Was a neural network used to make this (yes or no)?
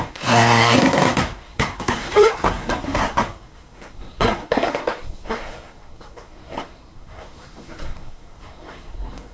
yes